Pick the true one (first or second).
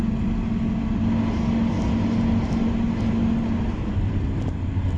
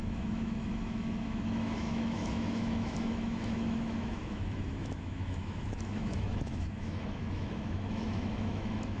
first